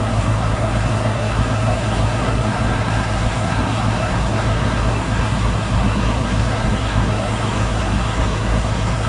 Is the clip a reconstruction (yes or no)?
yes